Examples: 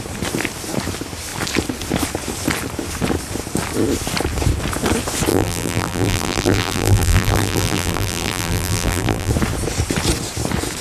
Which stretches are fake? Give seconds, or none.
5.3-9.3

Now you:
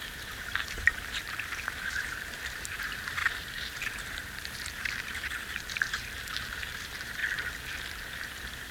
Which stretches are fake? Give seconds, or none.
0.0-7.2

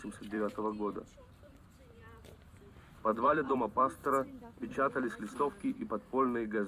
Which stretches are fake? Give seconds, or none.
0.0-4.0

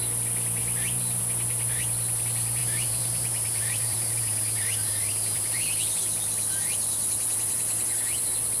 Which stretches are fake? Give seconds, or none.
0.6-1.2; 2.6-5.6

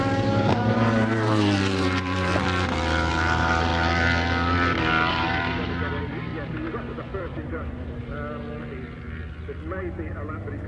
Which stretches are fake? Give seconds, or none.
0.0-2.3; 3.1-3.7; 5.1-6.3; 7.2-8.0

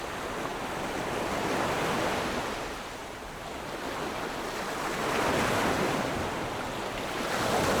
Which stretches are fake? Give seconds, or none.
none

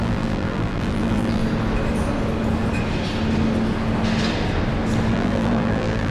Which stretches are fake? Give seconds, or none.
0.0-1.4; 5.1-6.1